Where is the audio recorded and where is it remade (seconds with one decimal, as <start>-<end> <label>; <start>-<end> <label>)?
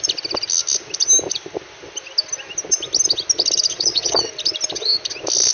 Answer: 0.0-3.7 recorded; 3.7-4.3 remade; 4.3-5.5 recorded